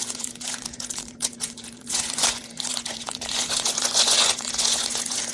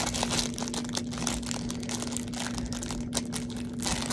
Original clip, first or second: second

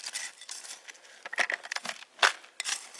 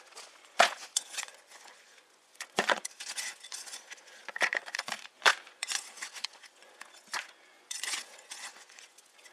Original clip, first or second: first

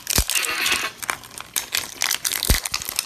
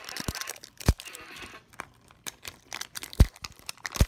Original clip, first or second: first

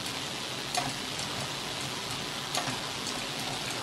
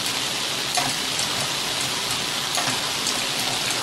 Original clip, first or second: first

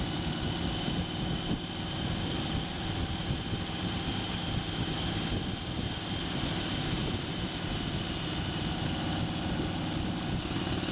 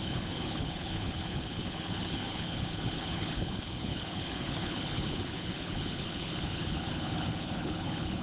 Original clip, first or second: first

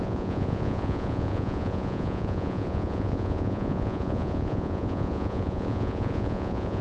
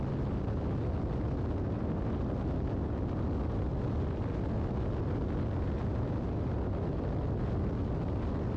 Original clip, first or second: second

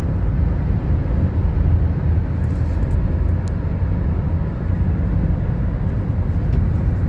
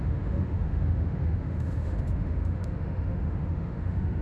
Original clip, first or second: first